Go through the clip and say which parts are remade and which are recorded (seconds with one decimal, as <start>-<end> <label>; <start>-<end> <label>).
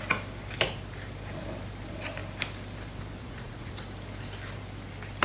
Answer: 0.0-3.2 recorded; 3.2-3.7 remade; 3.7-5.2 recorded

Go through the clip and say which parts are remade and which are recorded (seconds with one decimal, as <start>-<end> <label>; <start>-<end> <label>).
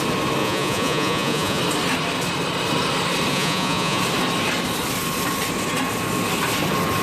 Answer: 0.0-0.4 recorded; 0.4-1.6 remade; 1.6-3.3 recorded; 3.3-4.0 remade; 4.0-7.0 recorded